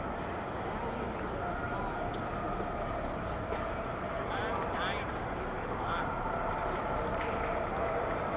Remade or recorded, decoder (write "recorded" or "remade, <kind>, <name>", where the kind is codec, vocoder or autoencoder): recorded